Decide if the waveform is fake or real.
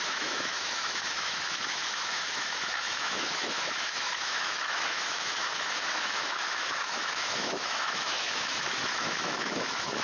fake